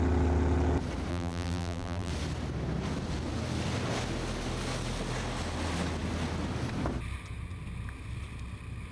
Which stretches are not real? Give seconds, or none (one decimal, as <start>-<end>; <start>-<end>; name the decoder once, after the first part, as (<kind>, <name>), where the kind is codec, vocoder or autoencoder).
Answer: 1.1-2.1 (vocoder, BigVGAN v2)